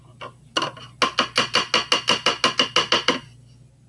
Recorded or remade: recorded